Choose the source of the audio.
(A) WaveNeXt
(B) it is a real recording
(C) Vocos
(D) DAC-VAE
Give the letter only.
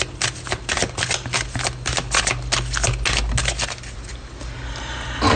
B